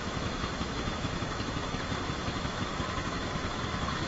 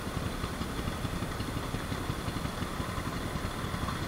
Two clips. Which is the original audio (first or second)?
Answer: second